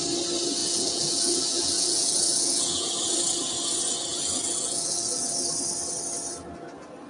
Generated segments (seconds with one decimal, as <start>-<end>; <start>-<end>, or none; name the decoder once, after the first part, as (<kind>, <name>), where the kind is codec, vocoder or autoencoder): 0.6-2.9 (vocoder, Vocos); 4.1-5.3